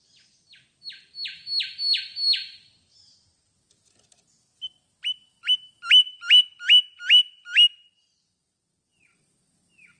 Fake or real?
real